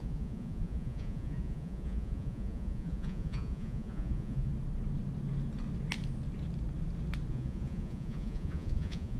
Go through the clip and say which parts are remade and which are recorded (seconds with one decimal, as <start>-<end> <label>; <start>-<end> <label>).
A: 0.0-4.5 remade; 4.5-7.3 recorded; 7.3-9.2 remade